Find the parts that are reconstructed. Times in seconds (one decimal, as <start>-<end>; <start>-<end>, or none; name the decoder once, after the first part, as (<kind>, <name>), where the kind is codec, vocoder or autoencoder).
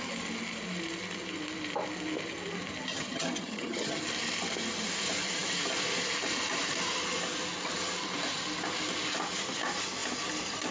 2.9-4.0 (vocoder, HiFi-GAN)